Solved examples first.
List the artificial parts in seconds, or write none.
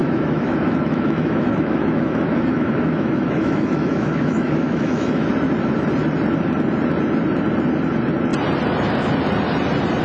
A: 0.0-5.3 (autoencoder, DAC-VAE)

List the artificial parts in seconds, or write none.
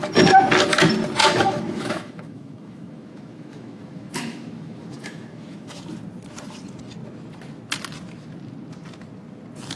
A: 1.2-5.8 (autoencoder, DAC-VAE)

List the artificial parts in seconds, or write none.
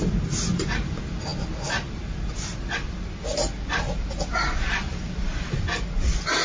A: none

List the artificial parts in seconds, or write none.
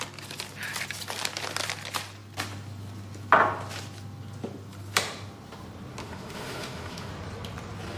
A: 6.0-7.1 (autoencoder, DAC-VAE)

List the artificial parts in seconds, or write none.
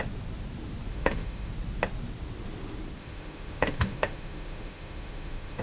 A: 0.9-1.5 (autoencoder, DAC-VAE); 3.0-5.6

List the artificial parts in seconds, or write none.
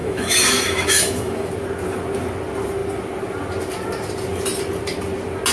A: 0.0-1.5 (autoencoder, DAC-VAE)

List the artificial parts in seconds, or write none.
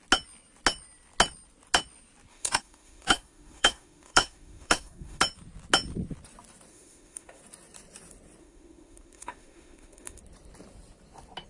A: 2.3-5.2 (autoencoder, DAC-VAE); 6.7-7.4; 8.4-10.2